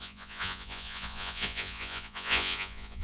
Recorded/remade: remade